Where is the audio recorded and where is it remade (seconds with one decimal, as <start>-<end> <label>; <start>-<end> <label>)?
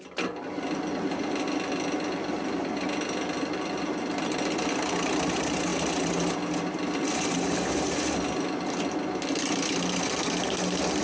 0.0-11.0 recorded